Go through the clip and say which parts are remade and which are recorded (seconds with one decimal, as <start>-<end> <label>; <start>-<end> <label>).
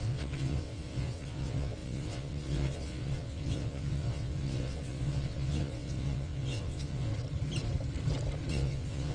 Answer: 0.0-7.1 remade; 7.1-8.5 recorded; 8.5-9.1 remade